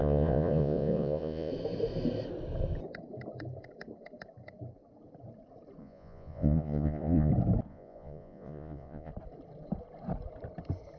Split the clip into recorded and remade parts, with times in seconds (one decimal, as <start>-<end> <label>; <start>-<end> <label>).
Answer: 0.0-1.5 remade; 1.5-5.8 recorded; 5.8-7.3 remade; 7.3-7.7 recorded; 7.7-9.1 remade; 9.1-11.0 recorded